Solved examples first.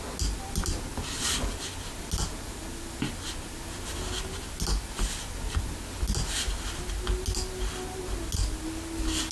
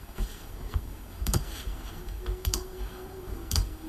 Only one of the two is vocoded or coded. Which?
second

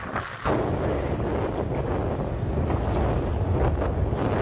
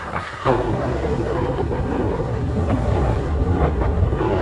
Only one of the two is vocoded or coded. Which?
second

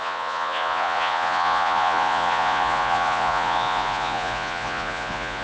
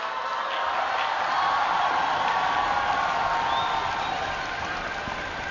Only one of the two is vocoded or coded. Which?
first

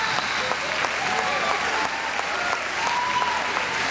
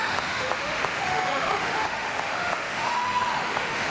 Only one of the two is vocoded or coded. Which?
second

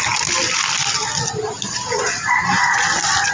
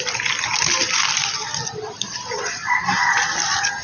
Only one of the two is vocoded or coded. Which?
second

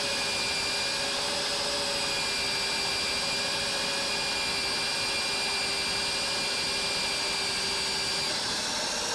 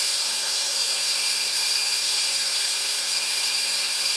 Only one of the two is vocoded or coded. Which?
second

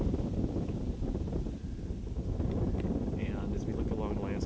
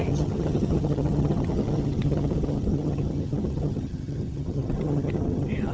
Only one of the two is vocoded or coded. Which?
second